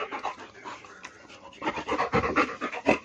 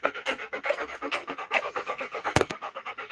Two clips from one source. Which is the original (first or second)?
first